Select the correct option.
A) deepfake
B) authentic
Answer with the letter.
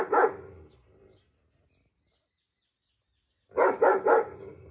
B